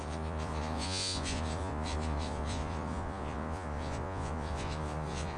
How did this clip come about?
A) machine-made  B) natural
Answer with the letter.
A